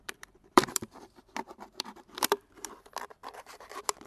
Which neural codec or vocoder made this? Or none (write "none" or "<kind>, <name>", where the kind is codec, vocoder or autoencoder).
vocoder, BigVGAN v2